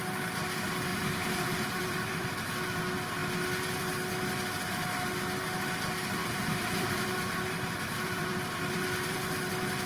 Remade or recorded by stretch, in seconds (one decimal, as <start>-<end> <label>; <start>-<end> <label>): 0.0-0.9 recorded; 0.9-2.3 remade; 2.3-6.2 recorded; 6.2-9.5 remade; 9.5-9.9 recorded